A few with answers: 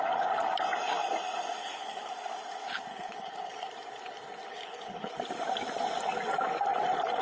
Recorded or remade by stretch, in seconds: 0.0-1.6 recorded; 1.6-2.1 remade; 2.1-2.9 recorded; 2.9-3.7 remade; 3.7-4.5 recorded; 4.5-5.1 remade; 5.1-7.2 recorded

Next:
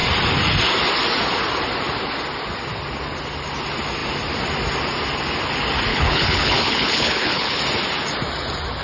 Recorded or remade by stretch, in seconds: 0.0-5.9 recorded; 5.9-7.6 remade; 7.6-8.8 recorded

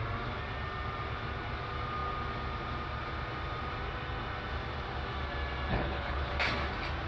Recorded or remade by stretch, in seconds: 0.0-5.7 recorded; 5.7-6.3 remade; 6.3-7.1 recorded

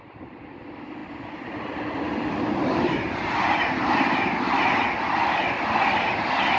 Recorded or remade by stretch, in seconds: 0.0-6.6 recorded

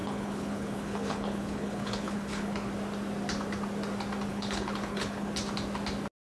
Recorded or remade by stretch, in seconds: 0.0-2.7 remade; 2.7-4.3 recorded; 4.3-5.3 remade; 5.3-6.3 recorded

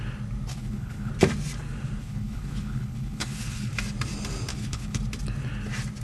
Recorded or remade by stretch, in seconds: 0.0-0.5 recorded; 0.5-1.1 remade; 1.1-2.0 recorded; 2.0-3.7 remade; 3.7-4.5 recorded; 4.5-5.0 remade; 5.0-6.0 recorded

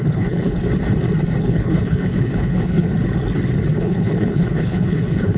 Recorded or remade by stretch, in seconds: 0.0-0.6 remade; 0.6-1.4 recorded; 1.4-2.9 remade; 2.9-3.8 recorded; 3.8-5.4 remade

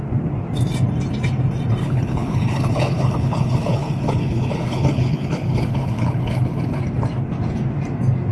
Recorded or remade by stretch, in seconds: 0.0-1.8 recorded; 1.8-6.8 remade; 6.8-8.3 recorded